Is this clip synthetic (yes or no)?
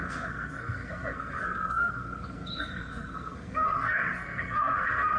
yes